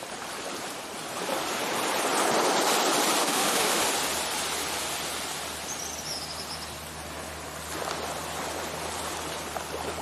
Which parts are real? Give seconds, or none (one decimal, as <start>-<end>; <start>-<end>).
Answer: 0.0-3.2; 3.8-10.0